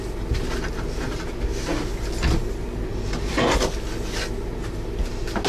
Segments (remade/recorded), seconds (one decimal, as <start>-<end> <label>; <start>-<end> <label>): 0.0-5.5 recorded